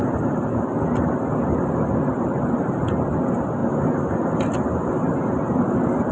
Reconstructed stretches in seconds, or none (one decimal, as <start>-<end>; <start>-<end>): none